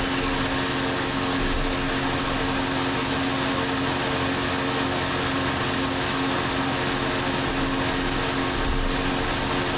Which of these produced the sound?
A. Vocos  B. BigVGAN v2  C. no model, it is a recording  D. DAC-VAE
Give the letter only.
C